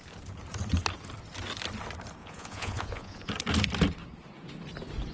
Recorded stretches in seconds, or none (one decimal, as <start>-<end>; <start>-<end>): 0.0-2.2; 3.3-5.1